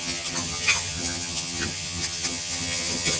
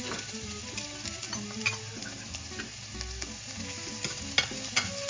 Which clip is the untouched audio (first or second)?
second